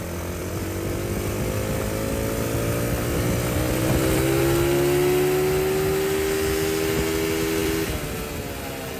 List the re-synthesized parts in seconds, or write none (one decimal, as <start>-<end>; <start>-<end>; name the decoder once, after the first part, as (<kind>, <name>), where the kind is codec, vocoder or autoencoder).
0.4-1.3 (vocoder, BigVGAN v2); 3.1-4.4; 7.6-8.3